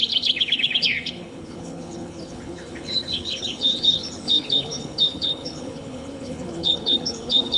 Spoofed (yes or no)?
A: yes